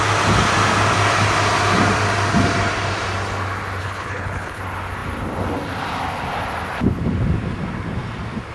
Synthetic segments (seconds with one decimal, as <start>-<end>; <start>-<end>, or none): 3.8-4.6